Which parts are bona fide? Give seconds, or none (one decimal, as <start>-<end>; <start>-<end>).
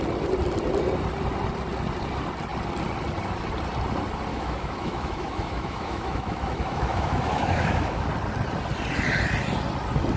0.0-4.3; 8.1-10.2